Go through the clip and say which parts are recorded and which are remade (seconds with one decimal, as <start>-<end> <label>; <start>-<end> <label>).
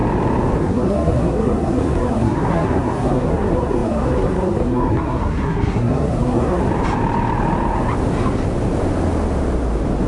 0.0-0.6 recorded; 0.6-6.6 remade; 6.6-10.1 recorded